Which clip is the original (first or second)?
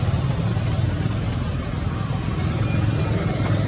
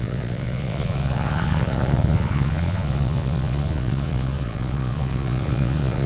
first